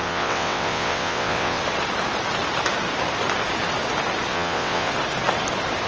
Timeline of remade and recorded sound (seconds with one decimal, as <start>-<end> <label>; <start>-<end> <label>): 0.0-1.6 remade; 1.6-4.3 recorded; 4.3-4.9 remade; 4.9-5.9 recorded